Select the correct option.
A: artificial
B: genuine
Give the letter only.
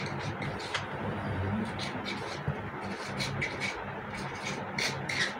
B